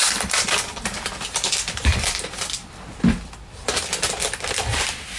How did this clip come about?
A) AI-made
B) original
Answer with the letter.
A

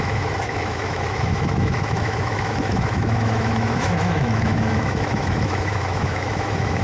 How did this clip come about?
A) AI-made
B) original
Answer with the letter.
A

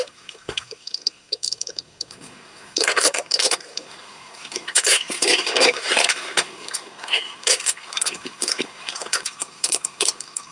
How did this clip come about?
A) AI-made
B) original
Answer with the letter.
A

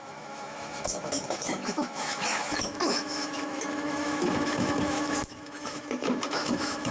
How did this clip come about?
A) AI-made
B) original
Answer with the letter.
A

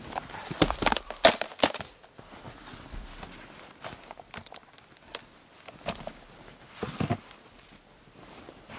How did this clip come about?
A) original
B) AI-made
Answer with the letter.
A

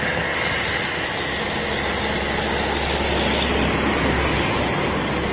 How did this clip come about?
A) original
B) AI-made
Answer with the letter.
A